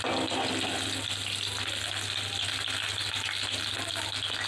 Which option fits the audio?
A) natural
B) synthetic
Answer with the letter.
A